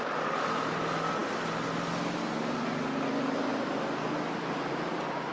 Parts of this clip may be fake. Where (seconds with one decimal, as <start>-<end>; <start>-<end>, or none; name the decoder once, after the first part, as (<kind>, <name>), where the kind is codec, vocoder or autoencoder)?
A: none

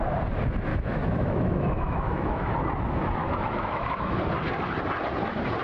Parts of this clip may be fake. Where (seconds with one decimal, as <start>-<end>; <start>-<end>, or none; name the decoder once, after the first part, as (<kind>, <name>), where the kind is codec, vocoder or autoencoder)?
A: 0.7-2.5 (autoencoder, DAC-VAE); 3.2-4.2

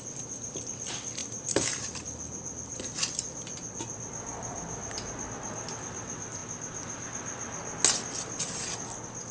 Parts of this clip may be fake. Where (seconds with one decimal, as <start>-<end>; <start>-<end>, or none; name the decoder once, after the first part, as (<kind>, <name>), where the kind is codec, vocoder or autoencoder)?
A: 1.2-4.9 (vocoder, BigVGAN v2)

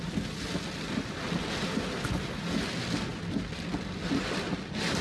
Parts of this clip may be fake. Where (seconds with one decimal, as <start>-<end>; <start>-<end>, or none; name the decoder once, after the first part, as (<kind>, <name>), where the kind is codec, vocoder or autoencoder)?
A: none

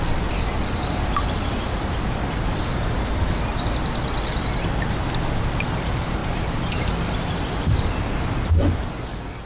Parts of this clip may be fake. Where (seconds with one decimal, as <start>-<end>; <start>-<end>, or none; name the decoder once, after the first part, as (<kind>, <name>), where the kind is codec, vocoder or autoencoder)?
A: 6.2-6.7 (vocoder, BigVGAN v2)